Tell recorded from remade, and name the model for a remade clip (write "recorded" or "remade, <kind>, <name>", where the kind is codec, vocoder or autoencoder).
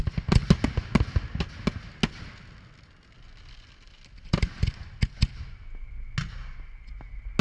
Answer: recorded